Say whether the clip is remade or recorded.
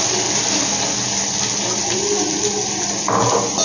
recorded